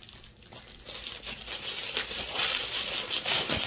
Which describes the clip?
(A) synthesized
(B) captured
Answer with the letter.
B